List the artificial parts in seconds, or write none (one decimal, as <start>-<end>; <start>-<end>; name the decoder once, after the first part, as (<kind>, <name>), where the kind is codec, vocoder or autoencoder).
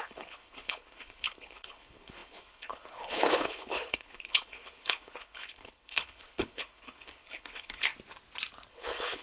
0.0-7.9 (codec, HILCodec); 8.7-9.2